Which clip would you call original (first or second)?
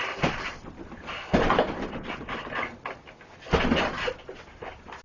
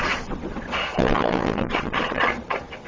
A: first